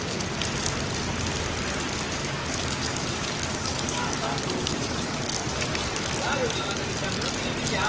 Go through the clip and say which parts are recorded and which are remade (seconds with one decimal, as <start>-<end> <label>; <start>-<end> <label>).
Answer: 0.0-2.2 recorded; 2.2-5.4 remade; 5.4-7.9 recorded